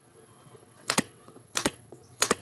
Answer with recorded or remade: remade